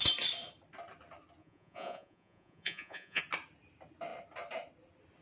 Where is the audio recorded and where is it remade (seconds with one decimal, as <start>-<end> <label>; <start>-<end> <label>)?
0.0-1.4 recorded; 1.4-3.2 remade; 3.2-5.2 recorded